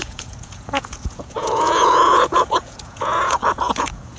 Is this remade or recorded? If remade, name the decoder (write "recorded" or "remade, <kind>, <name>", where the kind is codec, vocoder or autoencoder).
remade, vocoder, Vocos